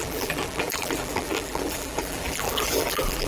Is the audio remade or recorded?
remade